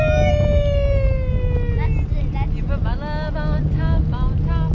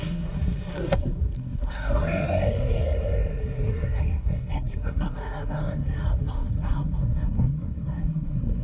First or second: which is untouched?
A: first